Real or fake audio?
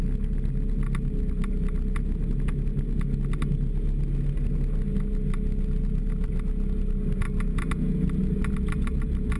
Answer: real